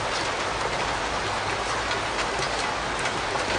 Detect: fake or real real